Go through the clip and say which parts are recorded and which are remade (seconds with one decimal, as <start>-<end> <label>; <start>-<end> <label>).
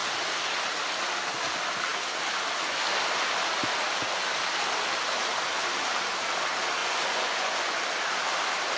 0.0-6.8 recorded; 6.8-7.8 remade; 7.8-8.8 recorded